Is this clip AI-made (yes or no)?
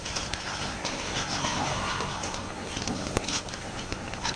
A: yes